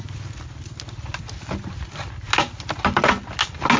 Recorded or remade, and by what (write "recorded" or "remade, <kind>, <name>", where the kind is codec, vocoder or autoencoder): recorded